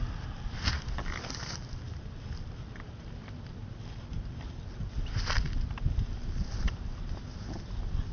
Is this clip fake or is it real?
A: real